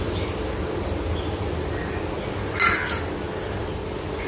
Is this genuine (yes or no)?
yes